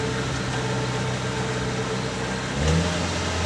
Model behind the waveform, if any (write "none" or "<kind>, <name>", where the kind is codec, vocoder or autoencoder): none